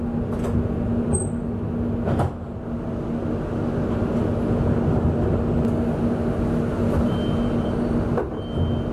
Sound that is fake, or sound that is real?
real